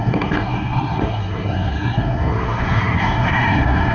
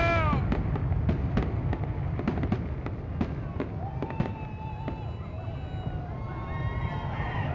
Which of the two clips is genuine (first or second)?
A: second